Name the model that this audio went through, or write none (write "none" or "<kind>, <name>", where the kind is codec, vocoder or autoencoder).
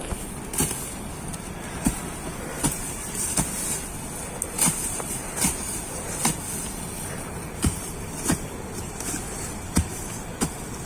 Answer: none